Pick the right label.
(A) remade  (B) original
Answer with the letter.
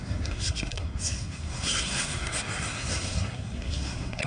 A